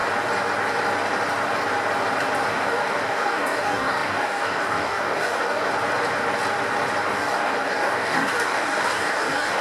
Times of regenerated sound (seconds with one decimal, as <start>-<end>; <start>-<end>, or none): 2.5-5.7; 7.1-9.6